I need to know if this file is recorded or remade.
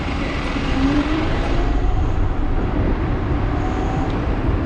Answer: remade